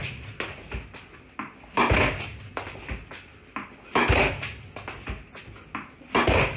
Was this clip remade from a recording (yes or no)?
no